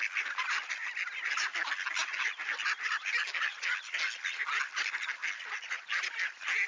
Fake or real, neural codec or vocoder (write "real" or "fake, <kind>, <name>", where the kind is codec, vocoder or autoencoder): real